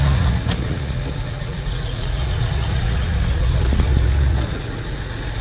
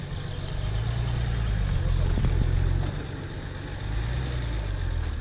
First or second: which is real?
second